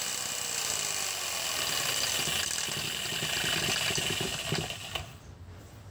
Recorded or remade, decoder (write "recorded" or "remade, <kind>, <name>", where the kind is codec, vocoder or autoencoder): recorded